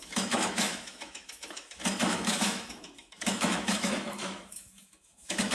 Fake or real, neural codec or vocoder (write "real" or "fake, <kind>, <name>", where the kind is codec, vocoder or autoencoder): fake, autoencoder, DAC-VAE